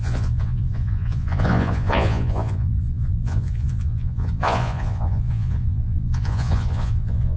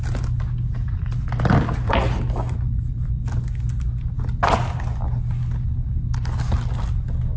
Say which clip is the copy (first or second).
first